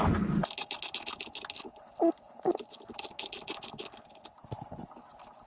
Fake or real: real